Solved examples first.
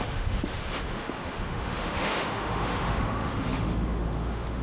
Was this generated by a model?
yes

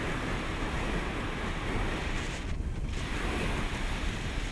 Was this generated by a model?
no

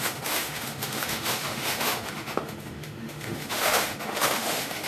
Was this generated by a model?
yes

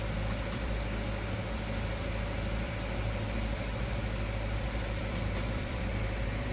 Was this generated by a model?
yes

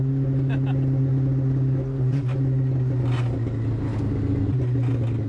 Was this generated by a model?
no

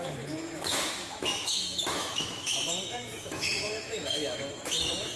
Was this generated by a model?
yes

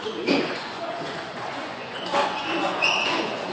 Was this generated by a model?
yes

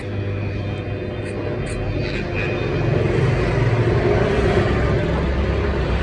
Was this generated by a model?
no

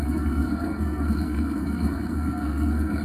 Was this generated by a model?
yes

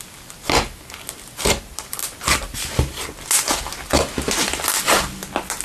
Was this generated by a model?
no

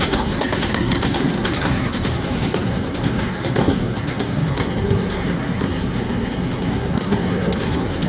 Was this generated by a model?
yes